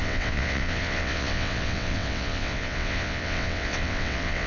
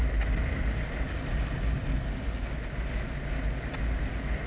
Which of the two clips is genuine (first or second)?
second